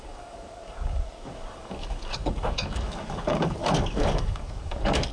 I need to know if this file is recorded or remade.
remade